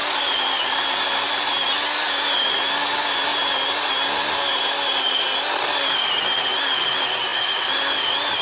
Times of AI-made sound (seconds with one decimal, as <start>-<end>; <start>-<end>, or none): 0.0-1.5; 3.3-3.9; 7.3-8.4